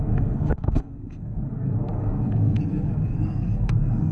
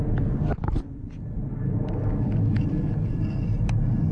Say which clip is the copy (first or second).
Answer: first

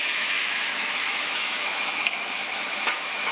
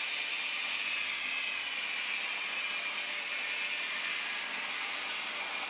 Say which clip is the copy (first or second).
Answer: first